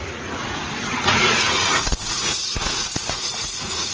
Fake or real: fake